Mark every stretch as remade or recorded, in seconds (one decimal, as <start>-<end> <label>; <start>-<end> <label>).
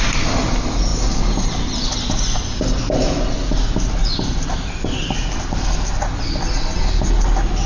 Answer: 0.0-7.7 recorded